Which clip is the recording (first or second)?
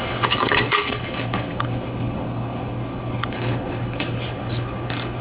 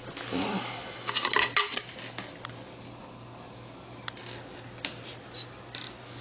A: second